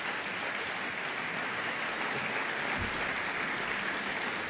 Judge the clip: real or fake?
real